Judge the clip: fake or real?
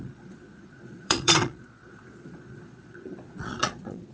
fake